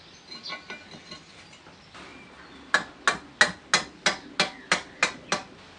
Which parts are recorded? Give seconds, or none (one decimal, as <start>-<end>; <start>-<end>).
0.0-5.8

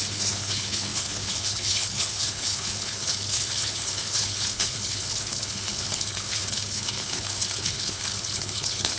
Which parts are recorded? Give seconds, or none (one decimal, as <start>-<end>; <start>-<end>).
none

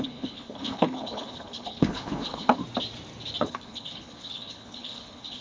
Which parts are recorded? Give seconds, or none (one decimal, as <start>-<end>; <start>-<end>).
2.6-3.4

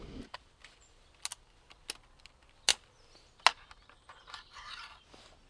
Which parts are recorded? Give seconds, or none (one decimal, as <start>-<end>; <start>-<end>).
0.0-5.5

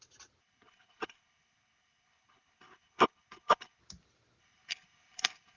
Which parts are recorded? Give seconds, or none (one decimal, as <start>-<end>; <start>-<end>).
0.0-0.4; 3.8-4.4

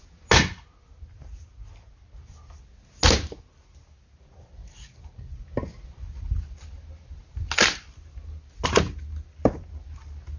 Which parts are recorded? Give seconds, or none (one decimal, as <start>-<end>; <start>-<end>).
0.0-10.4